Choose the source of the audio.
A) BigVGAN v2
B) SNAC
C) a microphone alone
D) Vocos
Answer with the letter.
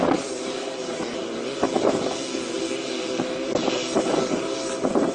C